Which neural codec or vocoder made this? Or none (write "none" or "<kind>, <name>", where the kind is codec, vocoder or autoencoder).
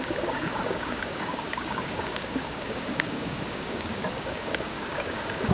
codec, DAC